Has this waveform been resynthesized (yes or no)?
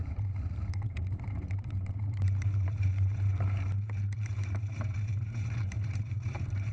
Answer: yes